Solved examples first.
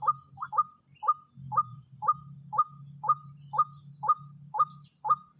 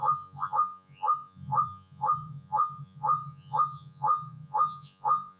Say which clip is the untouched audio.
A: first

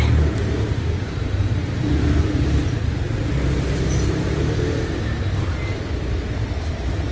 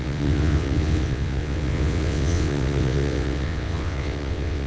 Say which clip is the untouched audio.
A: first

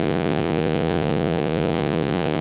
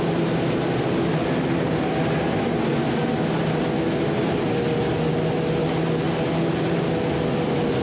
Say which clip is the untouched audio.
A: second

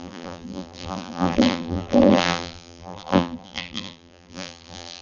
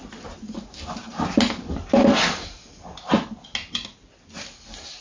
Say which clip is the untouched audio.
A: second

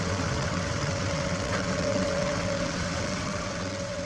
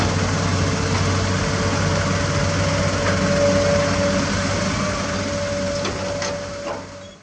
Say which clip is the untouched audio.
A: second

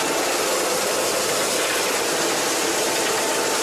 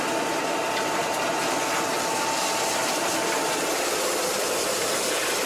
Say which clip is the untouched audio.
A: first